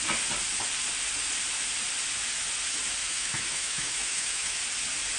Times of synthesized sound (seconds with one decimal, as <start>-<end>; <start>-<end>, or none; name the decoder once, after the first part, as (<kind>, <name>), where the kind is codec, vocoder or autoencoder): 3.0-4.6 (autoencoder, DAC-VAE)